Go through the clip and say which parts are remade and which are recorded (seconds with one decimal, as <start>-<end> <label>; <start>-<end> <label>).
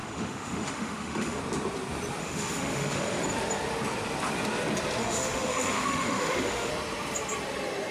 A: 0.0-1.4 remade; 1.4-2.2 recorded; 2.2-3.2 remade; 3.2-5.0 recorded; 5.0-6.7 remade; 6.7-7.9 recorded